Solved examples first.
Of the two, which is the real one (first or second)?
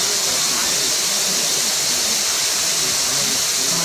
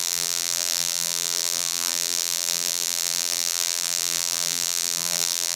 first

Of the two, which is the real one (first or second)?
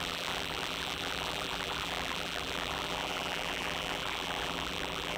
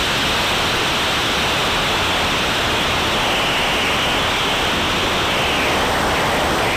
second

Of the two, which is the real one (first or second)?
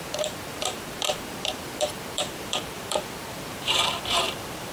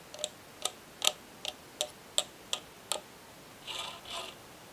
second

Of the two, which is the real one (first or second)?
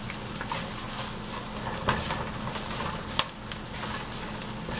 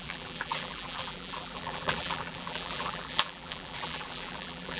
first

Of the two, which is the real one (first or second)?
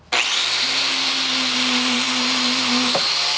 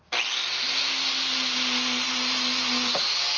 second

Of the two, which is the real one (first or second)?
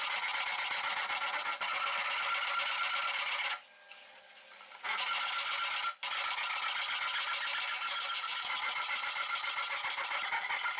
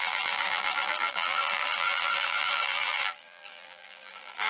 first